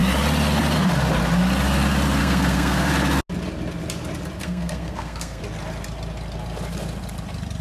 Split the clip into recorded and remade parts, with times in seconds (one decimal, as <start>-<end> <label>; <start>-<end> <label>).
0.0-2.2 recorded; 2.2-2.9 remade; 2.9-4.4 recorded; 4.4-5.4 remade; 5.4-7.6 recorded

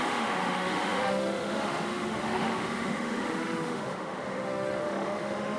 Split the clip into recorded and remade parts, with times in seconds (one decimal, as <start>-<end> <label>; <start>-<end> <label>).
0.0-5.6 remade

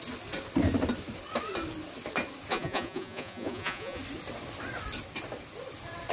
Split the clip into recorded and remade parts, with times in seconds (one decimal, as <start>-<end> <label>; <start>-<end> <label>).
0.0-2.5 recorded; 2.5-4.0 remade; 4.0-6.1 recorded

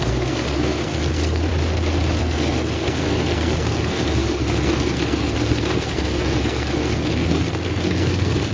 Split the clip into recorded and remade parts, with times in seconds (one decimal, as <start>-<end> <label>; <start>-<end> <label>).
0.0-1.5 remade; 1.5-2.2 recorded; 2.2-8.5 remade

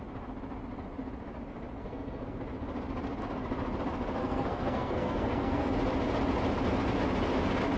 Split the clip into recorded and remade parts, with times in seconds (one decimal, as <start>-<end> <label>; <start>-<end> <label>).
0.0-1.8 recorded; 1.8-2.4 remade; 2.4-4.2 recorded; 4.2-5.7 remade; 5.7-7.8 recorded

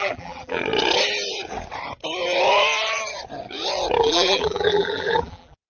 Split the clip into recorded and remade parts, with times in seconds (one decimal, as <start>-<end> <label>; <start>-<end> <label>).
0.0-0.6 remade; 0.6-4.0 recorded; 4.0-5.7 remade

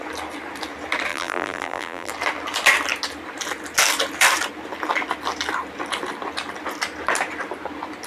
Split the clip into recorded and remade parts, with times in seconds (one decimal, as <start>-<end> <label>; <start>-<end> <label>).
0.0-1.1 recorded; 1.1-2.1 remade; 2.1-8.1 recorded

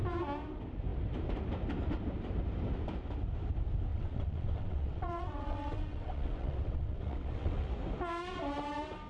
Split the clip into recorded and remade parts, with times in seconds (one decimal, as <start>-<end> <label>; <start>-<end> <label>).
0.0-3.9 recorded; 3.9-7.7 remade; 7.7-9.1 recorded